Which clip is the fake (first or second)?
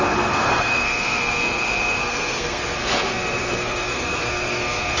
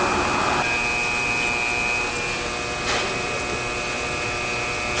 first